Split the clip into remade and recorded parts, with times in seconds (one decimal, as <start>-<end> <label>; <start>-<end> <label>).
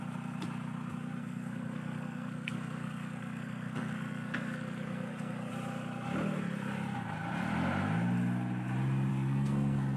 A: 0.0-1.2 recorded; 1.2-5.5 remade; 5.5-9.1 recorded; 9.1-10.0 remade